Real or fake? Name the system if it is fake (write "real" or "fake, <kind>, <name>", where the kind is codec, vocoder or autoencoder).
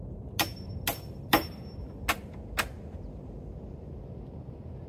real